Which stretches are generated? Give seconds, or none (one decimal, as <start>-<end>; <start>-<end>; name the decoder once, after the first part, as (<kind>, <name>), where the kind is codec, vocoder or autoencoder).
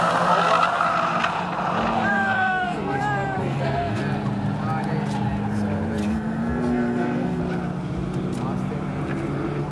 2.1-3.0 (codec, SNAC); 3.4-4.0; 6.0-7.4